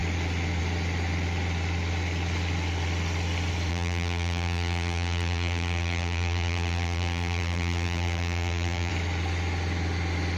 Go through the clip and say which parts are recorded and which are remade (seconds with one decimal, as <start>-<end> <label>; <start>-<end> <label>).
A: 0.0-3.7 recorded; 3.7-8.9 remade; 8.9-10.4 recorded